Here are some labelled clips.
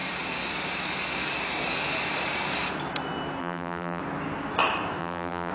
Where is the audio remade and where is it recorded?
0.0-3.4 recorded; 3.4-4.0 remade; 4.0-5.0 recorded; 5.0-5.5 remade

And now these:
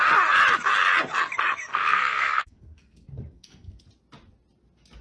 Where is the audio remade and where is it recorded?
0.0-1.7 recorded; 1.7-3.8 remade; 3.8-5.0 recorded

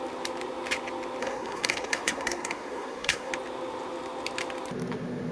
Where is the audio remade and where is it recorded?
0.0-1.2 recorded; 1.2-3.3 remade; 3.3-5.3 recorded

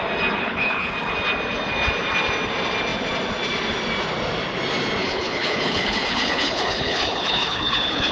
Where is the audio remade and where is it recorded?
0.0-0.4 recorded; 0.4-0.9 remade; 0.9-5.0 recorded; 5.0-8.1 remade

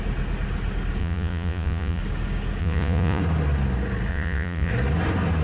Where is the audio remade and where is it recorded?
0.0-1.0 recorded; 1.0-2.0 remade; 2.0-2.6 recorded; 2.6-3.2 remade; 3.2-4.1 recorded; 4.1-4.7 remade; 4.7-5.4 recorded

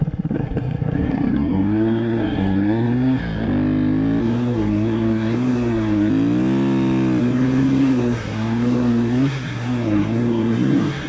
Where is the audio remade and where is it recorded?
0.0-3.2 remade; 3.2-4.2 recorded; 4.2-6.1 remade; 6.1-7.2 recorded; 7.2-11.1 remade

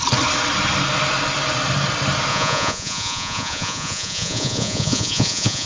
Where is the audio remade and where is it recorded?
0.0-2.3 recorded; 2.3-5.7 remade